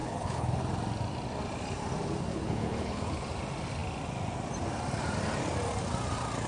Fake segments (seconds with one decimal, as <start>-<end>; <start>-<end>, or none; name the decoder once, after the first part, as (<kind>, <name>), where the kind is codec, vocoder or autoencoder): 0.0-0.6 (codec, HILCodec); 2.3-3.1